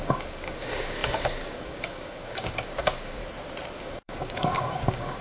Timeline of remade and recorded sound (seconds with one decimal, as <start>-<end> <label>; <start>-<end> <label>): 0.0-3.2 remade; 3.2-3.8 recorded; 3.8-5.2 remade